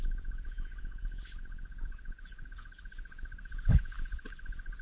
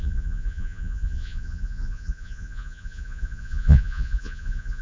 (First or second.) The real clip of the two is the first